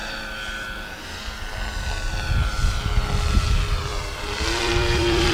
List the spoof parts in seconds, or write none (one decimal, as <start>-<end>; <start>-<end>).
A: 3.2-5.3